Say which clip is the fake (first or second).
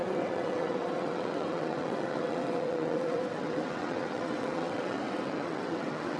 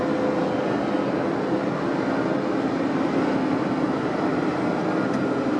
first